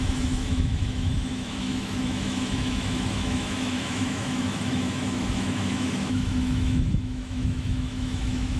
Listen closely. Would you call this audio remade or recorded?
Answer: remade